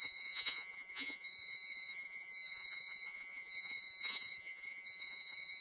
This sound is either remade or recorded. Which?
remade